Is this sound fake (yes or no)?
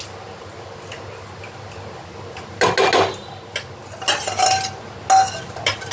no